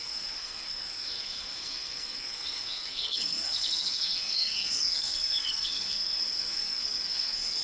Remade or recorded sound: remade